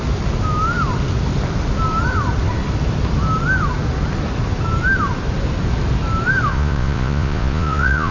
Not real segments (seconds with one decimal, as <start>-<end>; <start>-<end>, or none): 6.5-8.1